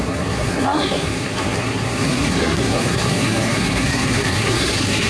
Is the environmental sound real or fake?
fake